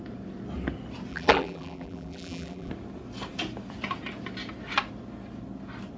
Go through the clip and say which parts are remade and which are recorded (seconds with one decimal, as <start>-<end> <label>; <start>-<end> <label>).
0.0-1.1 recorded; 1.1-2.7 remade; 2.7-6.0 recorded